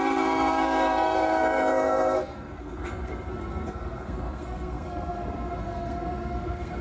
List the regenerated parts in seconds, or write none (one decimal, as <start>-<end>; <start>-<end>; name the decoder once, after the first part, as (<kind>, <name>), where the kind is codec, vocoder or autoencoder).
0.0-6.8 (codec, SNAC)